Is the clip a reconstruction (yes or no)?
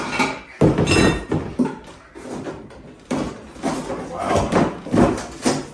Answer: no